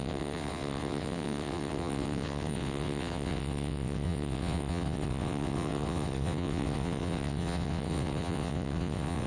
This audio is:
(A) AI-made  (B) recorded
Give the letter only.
A